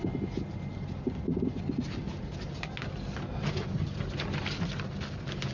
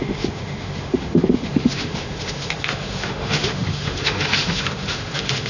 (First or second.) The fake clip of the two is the second